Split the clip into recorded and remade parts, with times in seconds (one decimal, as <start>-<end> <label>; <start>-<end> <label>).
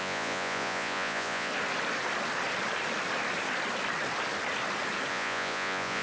0.0-1.5 remade; 1.5-5.1 recorded; 5.1-6.0 remade